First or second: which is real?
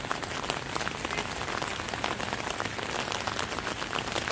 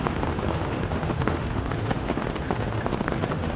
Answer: first